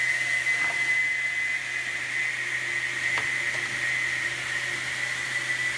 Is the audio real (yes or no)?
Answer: yes